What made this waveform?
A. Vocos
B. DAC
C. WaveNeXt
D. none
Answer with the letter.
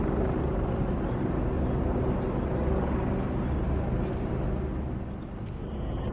D